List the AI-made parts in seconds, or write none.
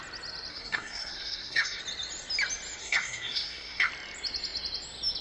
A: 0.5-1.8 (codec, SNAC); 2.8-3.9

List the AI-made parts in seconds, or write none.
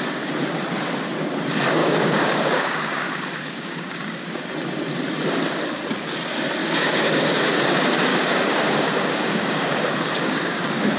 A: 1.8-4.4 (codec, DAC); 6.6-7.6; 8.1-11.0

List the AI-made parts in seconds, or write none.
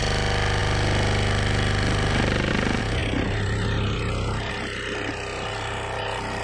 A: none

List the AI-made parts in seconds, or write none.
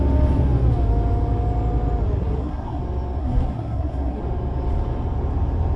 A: 2.2-2.8 (codec, SNAC); 3.2-4.2